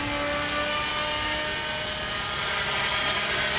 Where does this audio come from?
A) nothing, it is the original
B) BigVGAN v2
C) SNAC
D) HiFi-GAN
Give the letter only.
A